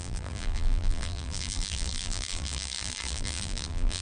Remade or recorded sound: remade